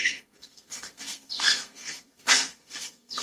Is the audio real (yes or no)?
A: no